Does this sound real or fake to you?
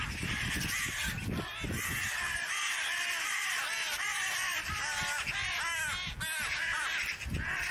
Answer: real